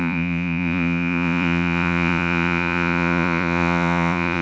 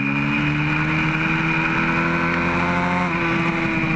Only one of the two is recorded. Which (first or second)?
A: second